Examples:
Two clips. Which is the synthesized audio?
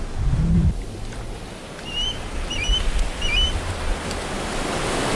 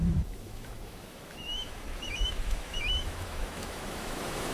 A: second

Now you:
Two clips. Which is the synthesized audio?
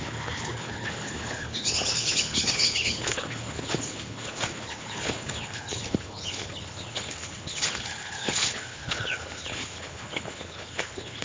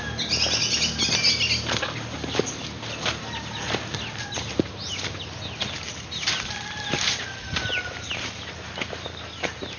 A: first